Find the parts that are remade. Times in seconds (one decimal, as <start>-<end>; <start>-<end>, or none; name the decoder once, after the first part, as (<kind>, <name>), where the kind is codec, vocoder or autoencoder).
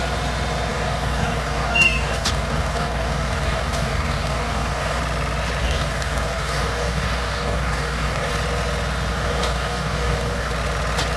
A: 0.7-5.0 (codec, DAC); 5.6-8.3; 9.1-10.5